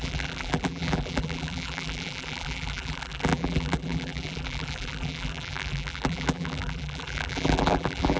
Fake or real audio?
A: fake